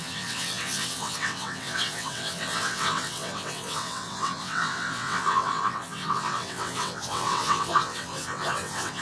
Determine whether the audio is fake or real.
fake